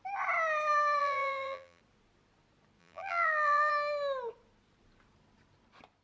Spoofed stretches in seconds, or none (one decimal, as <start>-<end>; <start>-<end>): 1.0-1.8; 2.8-3.7